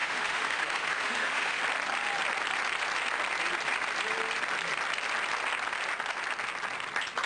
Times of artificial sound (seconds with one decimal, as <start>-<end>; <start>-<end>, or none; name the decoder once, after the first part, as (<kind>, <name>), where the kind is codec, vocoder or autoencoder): 0.0-1.6 (autoencoder, DAC-VAE)